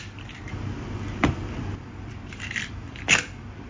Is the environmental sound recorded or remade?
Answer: recorded